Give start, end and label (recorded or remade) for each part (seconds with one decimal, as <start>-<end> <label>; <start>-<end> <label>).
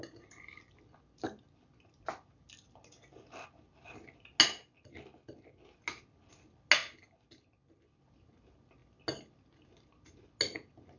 0.0-11.0 recorded